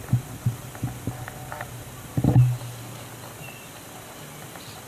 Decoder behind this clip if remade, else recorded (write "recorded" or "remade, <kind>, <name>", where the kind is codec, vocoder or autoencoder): recorded